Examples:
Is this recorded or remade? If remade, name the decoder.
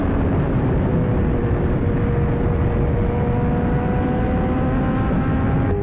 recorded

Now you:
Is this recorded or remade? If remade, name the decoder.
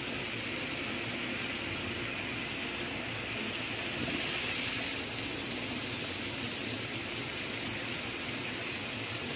recorded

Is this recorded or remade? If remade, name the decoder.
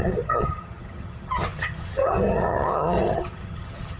remade, vocoder, HiFi-GAN